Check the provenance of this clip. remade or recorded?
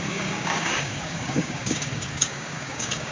remade